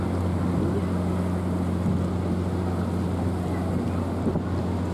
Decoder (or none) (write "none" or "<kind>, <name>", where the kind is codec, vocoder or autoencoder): none